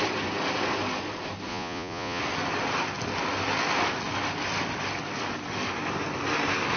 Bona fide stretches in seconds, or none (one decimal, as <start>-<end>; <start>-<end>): 0.0-1.5; 2.2-6.8